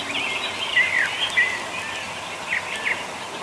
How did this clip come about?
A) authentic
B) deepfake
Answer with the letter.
A